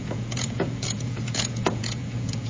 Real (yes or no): no